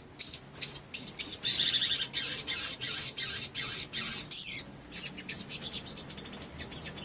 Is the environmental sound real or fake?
real